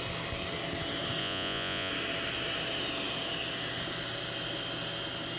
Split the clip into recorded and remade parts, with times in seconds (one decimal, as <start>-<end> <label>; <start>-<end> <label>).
0.0-1.2 recorded; 1.2-1.9 remade; 1.9-5.4 recorded